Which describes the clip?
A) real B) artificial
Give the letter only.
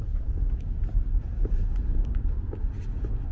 B